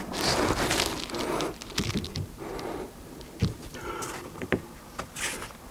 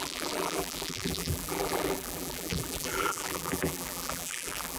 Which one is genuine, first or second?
first